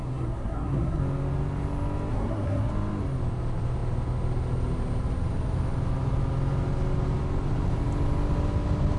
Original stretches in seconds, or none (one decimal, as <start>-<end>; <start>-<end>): 1.0-2.1; 2.7-9.0